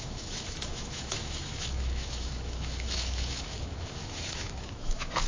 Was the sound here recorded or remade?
remade